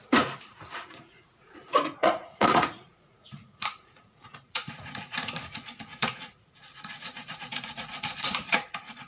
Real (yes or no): no